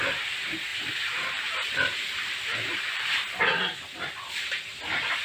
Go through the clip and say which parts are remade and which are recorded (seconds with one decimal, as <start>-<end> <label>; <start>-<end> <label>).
0.0-0.7 recorded; 0.7-3.6 remade; 3.6-5.2 recorded